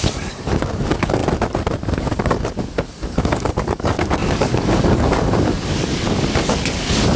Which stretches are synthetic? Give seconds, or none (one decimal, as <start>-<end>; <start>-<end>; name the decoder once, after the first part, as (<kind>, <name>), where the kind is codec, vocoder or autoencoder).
0.0-1.2 (codec, DAC); 2.0-7.2